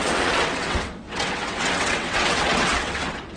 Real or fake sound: fake